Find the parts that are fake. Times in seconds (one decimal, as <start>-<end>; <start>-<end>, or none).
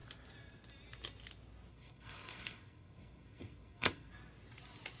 1.7-4.1